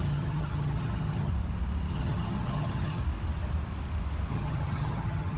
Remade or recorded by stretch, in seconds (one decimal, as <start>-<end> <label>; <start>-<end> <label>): 0.0-1.3 remade; 1.3-1.9 recorded; 1.9-3.0 remade; 3.0-4.3 recorded; 4.3-5.4 remade